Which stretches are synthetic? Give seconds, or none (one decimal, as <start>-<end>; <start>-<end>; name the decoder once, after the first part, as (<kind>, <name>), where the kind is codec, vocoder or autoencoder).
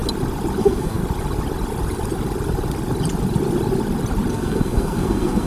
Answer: 0.6-1.0 (codec, SNAC); 4.3-5.5